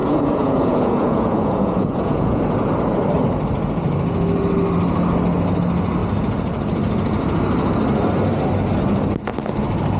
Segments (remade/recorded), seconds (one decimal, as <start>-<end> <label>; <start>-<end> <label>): 0.0-2.4 remade; 2.4-10.0 recorded